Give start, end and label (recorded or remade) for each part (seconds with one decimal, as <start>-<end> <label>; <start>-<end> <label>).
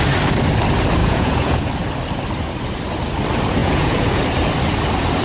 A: 0.0-1.0 recorded; 1.0-1.7 remade; 1.7-3.6 recorded; 3.6-4.2 remade; 4.2-5.2 recorded